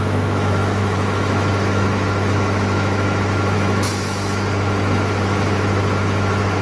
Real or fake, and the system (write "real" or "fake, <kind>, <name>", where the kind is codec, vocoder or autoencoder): fake, autoencoder, DAC-VAE